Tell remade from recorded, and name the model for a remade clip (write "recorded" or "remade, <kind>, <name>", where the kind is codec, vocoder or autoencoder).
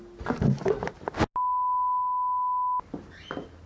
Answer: recorded